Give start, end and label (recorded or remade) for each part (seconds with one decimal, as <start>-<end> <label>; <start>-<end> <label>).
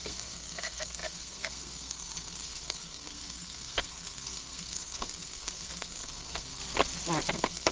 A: 0.0-6.6 remade; 6.6-7.3 recorded; 7.3-7.7 remade